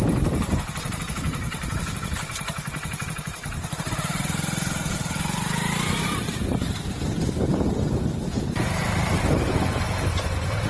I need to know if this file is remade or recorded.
remade